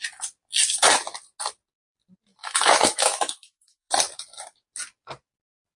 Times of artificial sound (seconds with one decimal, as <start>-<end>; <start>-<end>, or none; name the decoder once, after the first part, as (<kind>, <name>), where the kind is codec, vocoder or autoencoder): 2.4-3.9 (autoencoder, DAC-VAE)